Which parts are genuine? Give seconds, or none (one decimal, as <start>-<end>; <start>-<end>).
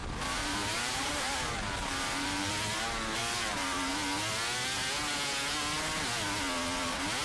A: 2.5-3.2; 3.9-7.2